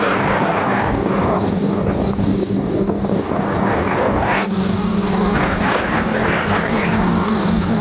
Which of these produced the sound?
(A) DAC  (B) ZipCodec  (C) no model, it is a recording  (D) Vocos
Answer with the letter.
A